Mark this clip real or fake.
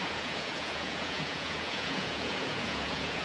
fake